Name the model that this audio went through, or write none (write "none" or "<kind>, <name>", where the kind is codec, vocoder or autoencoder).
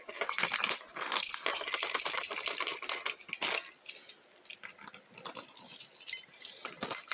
none